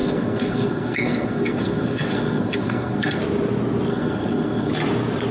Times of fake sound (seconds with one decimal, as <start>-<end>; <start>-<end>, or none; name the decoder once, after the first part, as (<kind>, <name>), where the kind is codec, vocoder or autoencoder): 0.0-3.2 (codec, SNAC); 3.9-4.7